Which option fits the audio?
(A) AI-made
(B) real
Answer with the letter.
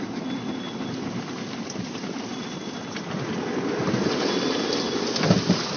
B